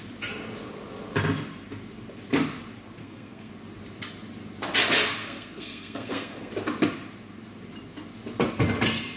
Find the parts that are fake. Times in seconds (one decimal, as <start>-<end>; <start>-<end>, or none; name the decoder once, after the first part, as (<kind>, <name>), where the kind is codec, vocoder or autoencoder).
3.0-3.5 (codec, SNAC); 5.2-6.5